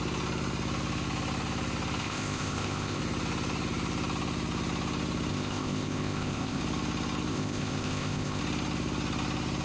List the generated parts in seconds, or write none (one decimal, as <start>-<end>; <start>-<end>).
2.0-3.0; 5.3-6.6; 7.3-8.4